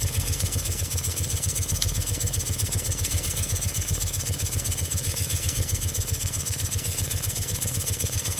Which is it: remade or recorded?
remade